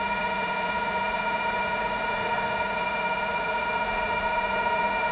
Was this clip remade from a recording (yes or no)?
yes